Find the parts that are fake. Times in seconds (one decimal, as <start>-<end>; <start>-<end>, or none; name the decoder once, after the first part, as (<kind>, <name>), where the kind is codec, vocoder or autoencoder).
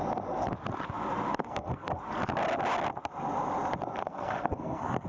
1.4-2.0 (codec, SNAC); 4.0-5.1